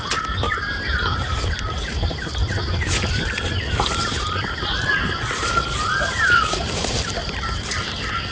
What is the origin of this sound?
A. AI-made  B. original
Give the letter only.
B